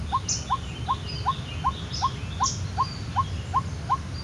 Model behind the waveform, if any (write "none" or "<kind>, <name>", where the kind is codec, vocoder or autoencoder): none